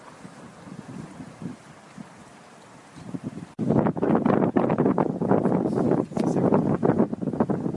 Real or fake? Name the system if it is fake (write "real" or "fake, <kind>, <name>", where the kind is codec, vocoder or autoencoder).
real